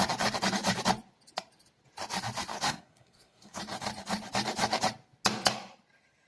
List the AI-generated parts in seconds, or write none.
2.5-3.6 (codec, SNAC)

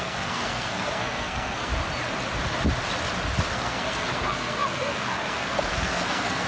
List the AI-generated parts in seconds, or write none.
0.0-1.7 (codec, SNAC); 3.5-6.5

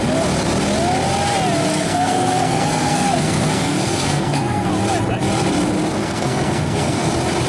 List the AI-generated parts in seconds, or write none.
1.7-4.7 (codec, SNAC); 6.0-7.1

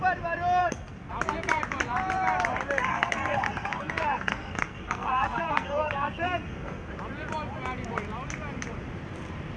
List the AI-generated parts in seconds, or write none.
0.6-1.1 (codec, SNAC); 2.9-6.9

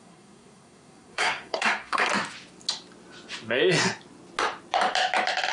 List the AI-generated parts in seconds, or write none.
0.0-2.1 (codec, SNAC)